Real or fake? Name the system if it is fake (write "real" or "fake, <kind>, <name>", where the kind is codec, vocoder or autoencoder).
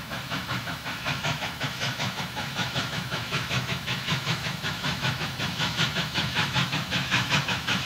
fake, autoencoder, DAC-VAE